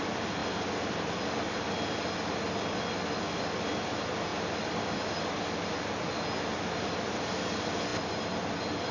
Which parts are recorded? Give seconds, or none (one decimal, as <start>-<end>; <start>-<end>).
0.0-8.9